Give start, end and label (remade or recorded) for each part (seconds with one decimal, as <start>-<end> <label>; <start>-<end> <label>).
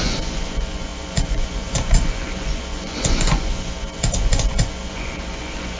0.0-5.8 remade